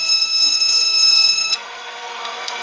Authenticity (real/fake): fake